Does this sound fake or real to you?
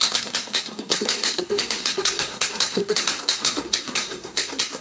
fake